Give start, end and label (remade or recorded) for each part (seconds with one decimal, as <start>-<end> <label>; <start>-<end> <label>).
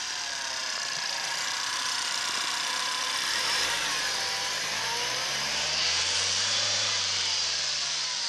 0.0-8.3 remade